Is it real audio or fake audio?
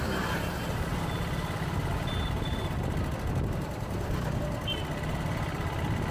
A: real